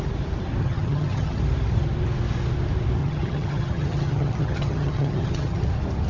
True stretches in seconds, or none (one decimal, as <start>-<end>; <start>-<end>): 0.0-0.6; 1.4-3.0; 5.6-6.1